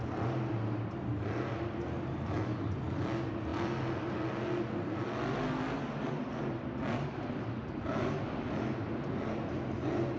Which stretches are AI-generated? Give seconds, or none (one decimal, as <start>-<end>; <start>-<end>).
none